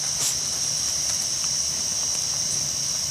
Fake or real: real